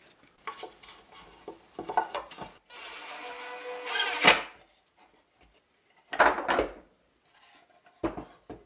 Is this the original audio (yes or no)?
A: yes